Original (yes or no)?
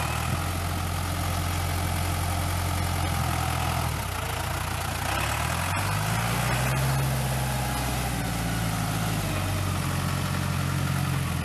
yes